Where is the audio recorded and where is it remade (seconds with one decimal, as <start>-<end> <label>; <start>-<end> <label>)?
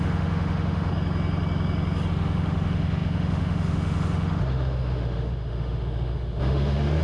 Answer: 0.0-0.9 remade; 0.9-2.1 recorded; 2.1-7.0 remade